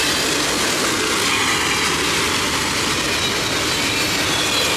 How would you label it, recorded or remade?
recorded